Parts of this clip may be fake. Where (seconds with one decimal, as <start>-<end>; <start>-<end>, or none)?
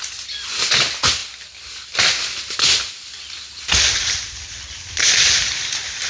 none